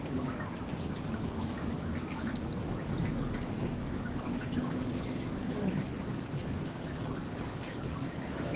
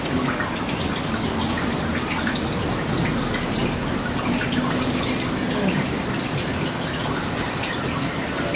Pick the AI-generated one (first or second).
first